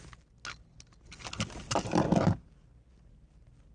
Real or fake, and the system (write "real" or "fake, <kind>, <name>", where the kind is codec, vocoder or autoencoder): real